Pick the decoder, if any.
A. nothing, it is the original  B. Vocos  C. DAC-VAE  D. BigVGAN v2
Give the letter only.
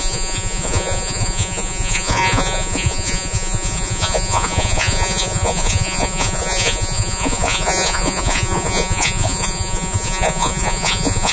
B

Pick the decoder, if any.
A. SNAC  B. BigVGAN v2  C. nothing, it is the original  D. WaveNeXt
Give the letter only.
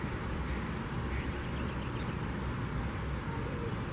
C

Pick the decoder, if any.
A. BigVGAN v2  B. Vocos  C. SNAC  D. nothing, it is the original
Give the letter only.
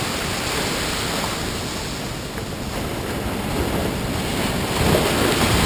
D